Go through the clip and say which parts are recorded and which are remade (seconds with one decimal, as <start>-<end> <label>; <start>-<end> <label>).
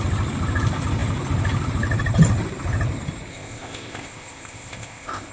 0.0-3.3 recorded; 3.3-5.3 remade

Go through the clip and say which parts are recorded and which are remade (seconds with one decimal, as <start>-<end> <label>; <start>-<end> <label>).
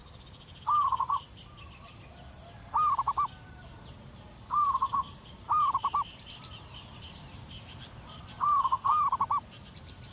0.0-10.1 recorded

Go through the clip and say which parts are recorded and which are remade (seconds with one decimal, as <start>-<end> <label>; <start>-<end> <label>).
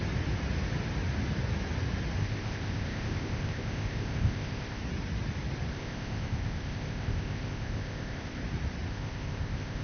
0.0-2.2 recorded; 2.2-4.8 remade; 4.8-5.7 recorded; 5.7-8.4 remade; 8.4-8.9 recorded; 8.9-9.8 remade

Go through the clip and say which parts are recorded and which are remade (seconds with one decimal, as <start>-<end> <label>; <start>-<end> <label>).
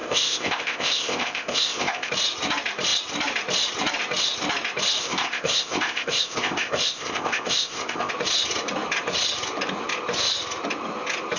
0.0-2.1 remade; 2.1-5.0 recorded; 5.0-8.1 remade; 8.1-11.4 recorded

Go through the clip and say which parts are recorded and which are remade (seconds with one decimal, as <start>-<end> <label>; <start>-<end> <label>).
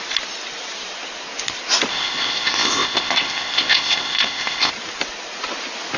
0.0-1.9 recorded; 1.9-4.7 remade; 4.7-6.0 recorded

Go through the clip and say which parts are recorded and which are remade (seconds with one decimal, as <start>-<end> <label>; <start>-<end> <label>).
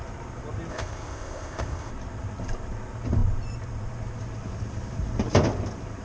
0.0-0.7 recorded; 0.7-1.9 remade; 1.9-6.0 recorded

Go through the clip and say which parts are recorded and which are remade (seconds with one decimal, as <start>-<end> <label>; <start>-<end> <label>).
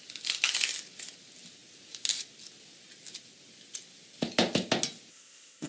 0.0-5.1 recorded; 5.1-5.7 remade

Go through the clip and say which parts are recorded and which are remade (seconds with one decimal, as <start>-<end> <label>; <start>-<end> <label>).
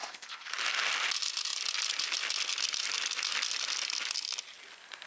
0.0-0.5 remade; 0.5-5.1 recorded